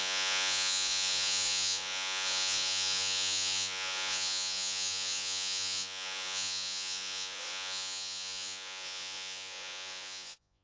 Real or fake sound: fake